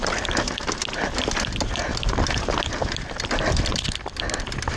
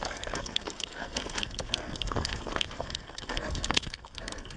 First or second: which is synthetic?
second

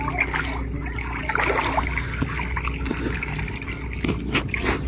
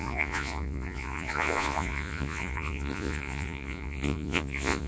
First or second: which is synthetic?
second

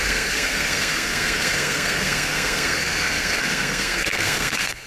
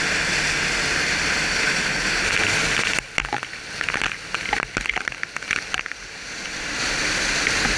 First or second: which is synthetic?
first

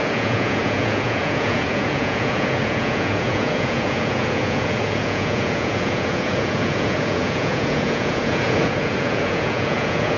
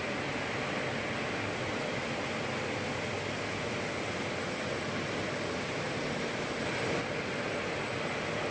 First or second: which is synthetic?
first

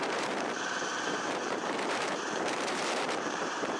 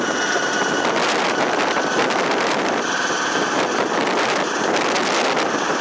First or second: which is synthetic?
first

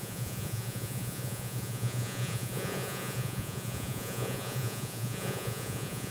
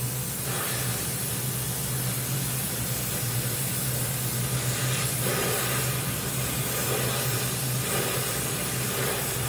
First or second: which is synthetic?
first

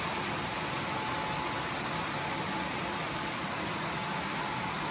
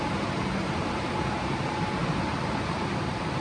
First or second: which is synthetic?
second